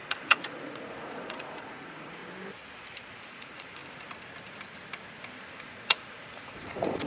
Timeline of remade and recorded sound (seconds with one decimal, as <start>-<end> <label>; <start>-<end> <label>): 0.0-2.2 remade; 2.2-3.2 recorded; 3.2-3.8 remade; 3.8-5.6 recorded; 5.6-7.1 remade